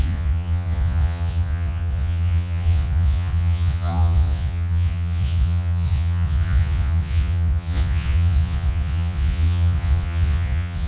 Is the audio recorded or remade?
remade